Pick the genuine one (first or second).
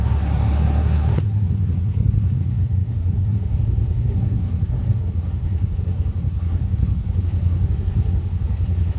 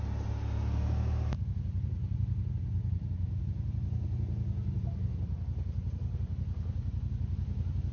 second